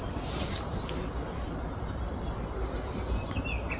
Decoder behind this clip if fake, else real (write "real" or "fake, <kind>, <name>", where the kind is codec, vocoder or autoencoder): real